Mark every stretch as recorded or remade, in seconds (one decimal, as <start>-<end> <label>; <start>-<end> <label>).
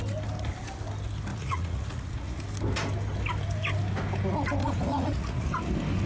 0.0-1.3 recorded; 1.3-2.4 remade; 2.4-4.6 recorded; 4.6-5.5 remade; 5.5-6.1 recorded